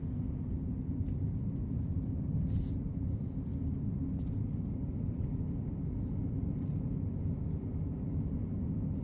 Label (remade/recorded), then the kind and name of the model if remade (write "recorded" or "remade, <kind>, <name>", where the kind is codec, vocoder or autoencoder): recorded